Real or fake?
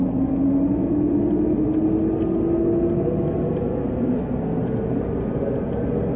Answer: real